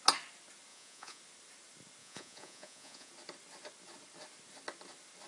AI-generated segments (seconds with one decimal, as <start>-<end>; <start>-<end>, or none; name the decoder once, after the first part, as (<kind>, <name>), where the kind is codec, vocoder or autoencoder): 0.7-1.2 (vocoder, Vocos); 2.0-3.1